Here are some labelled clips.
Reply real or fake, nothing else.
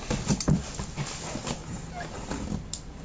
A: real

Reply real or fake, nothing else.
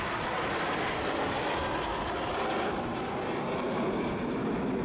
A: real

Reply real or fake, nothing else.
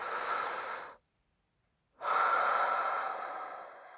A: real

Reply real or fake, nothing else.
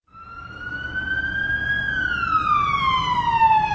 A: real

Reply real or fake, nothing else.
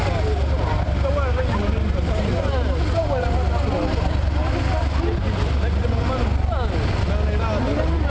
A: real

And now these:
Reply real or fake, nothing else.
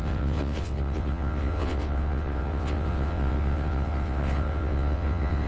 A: fake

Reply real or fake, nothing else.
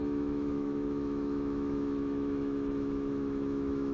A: fake